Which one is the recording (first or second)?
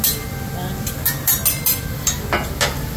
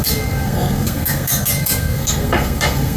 first